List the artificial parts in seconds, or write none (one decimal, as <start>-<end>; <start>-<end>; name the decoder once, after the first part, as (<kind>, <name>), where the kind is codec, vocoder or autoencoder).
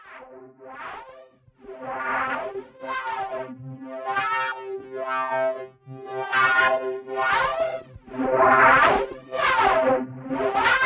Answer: 7.5-10.3 (vocoder, BigVGAN v2)